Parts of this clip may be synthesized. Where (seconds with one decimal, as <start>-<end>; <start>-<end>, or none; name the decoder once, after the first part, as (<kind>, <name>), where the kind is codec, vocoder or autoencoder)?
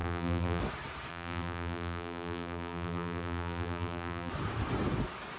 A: 0.0-0.6 (vocoder, BigVGAN v2); 1.1-4.3